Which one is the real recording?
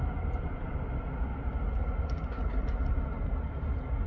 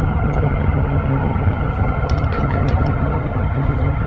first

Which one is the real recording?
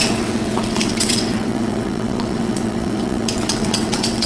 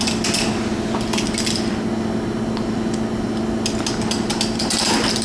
second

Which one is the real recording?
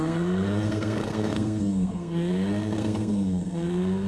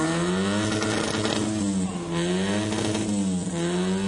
second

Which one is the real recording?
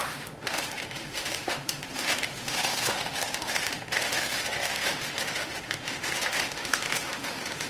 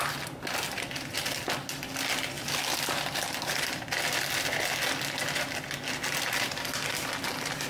second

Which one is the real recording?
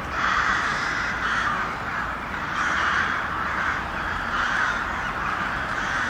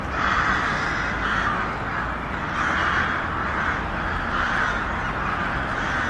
second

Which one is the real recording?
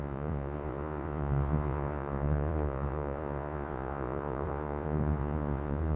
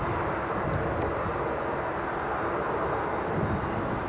second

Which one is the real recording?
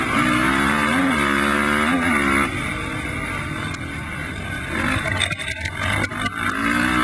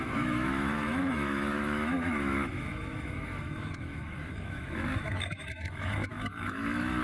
first